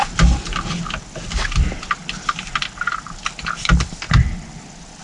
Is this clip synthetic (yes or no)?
no